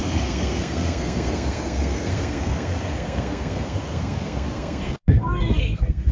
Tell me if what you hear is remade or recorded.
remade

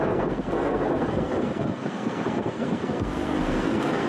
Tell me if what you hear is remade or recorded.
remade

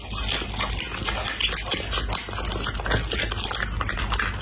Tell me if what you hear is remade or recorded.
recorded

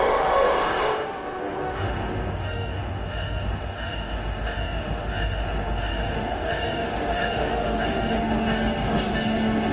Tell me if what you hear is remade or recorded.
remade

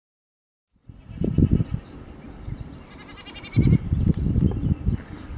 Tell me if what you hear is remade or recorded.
recorded